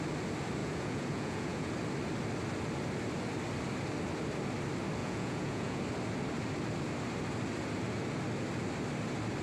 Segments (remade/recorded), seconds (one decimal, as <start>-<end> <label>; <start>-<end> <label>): 0.0-0.6 recorded; 0.6-1.7 remade; 1.7-5.0 recorded; 5.0-5.8 remade; 5.8-9.4 recorded